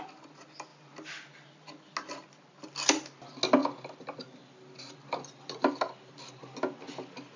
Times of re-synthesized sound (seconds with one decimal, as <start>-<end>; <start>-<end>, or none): none